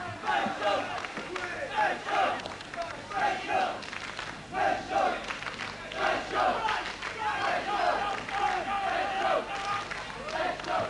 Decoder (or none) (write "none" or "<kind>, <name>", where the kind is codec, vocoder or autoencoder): none